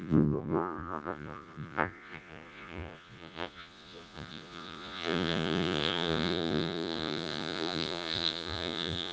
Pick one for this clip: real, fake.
fake